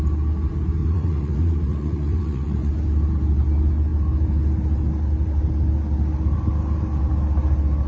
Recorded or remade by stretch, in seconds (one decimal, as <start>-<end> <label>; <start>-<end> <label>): 0.0-0.8 recorded; 0.8-2.7 remade; 2.7-7.9 recorded